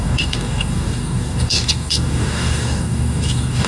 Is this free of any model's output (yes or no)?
no